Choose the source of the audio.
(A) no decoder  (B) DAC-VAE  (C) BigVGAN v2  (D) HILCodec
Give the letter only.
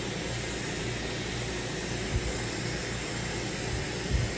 A